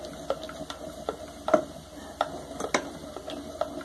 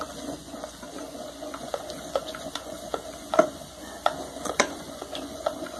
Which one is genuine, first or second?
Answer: first